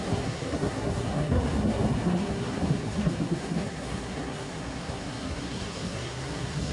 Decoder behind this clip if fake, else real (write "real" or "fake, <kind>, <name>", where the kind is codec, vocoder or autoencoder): fake, codec, SNAC